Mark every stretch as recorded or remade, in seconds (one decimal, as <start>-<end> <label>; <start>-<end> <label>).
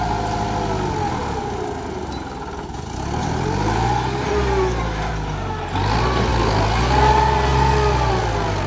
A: 0.0-8.7 recorded